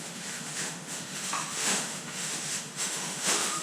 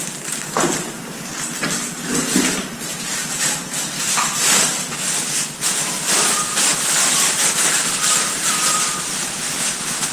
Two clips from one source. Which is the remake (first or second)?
first